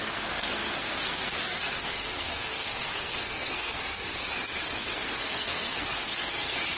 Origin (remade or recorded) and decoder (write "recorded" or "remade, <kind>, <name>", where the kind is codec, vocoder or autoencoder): remade, codec, SNAC